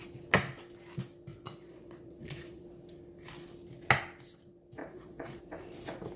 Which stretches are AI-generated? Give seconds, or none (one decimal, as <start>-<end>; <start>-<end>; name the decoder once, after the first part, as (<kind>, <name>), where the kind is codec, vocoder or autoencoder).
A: 1.3-2.6 (vocoder, Vocos); 4.8-5.4